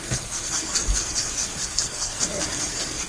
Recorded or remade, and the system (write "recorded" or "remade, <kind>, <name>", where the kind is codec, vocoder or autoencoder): remade, codec, SNAC